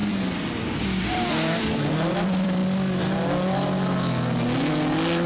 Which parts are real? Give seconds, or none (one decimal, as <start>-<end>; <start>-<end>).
2.6-5.3